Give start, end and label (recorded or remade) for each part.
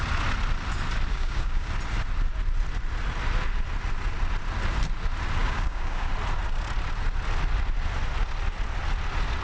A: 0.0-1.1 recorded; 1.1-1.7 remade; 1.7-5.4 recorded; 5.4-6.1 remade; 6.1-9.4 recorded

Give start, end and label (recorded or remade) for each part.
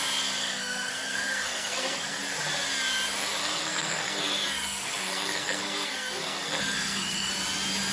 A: 0.0-0.4 recorded; 0.4-2.2 remade; 2.2-3.4 recorded; 3.4-7.3 remade; 7.3-7.9 recorded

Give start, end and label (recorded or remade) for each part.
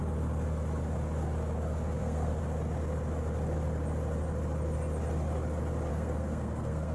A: 0.0-2.0 recorded; 2.0-2.4 remade; 2.4-5.9 recorded; 5.9-6.9 remade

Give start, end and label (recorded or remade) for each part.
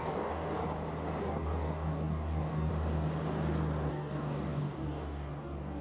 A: 0.0-0.6 remade; 0.6-1.2 recorded; 1.2-2.7 remade; 2.7-3.9 recorded; 3.9-5.8 remade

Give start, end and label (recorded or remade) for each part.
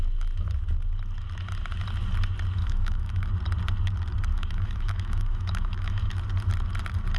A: 0.0-2.6 recorded; 2.6-3.3 remade; 3.3-4.3 recorded; 4.3-6.1 remade; 6.1-7.2 recorded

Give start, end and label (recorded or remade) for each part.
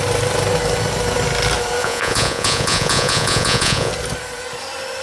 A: 0.0-1.8 recorded; 1.8-3.9 remade; 3.9-5.0 recorded